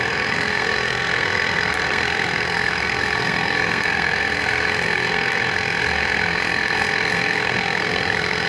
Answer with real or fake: fake